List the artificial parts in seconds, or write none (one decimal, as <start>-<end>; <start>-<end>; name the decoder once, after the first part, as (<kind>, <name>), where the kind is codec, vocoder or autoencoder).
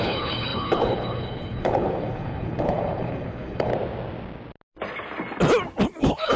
0.0-3.7 (codec, HILCodec); 6.0-6.4